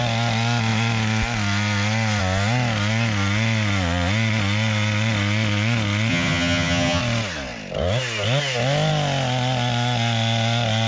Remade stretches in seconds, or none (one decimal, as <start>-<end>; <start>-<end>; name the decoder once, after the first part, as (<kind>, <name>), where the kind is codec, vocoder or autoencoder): 6.1-7.0 (vocoder, HiFi-GAN)